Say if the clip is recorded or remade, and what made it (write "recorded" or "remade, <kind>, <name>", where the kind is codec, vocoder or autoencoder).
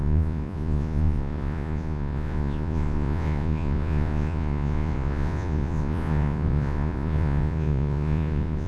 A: remade, vocoder, Vocos